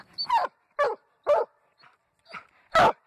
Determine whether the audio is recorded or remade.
recorded